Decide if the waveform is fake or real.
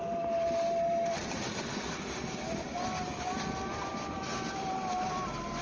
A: real